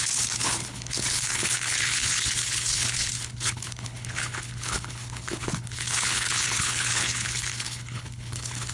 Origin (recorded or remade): remade